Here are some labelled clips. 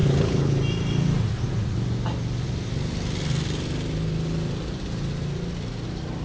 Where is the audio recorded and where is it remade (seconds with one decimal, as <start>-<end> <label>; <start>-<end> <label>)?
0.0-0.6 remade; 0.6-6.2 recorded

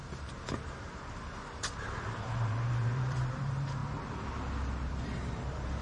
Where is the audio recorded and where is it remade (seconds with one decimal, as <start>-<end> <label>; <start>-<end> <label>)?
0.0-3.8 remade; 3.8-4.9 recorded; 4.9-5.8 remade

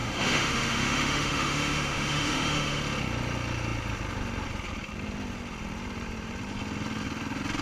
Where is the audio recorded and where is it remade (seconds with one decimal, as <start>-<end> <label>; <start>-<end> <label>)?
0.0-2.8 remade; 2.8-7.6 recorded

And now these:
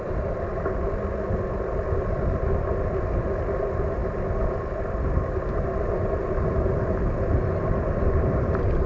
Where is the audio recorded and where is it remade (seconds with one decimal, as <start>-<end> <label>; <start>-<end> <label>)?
0.0-8.9 recorded

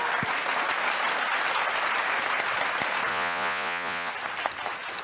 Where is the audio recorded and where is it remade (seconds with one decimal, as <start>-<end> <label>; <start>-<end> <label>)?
0.0-3.1 recorded; 3.1-4.1 remade; 4.1-5.0 recorded